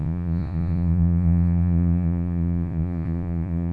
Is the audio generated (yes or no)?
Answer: yes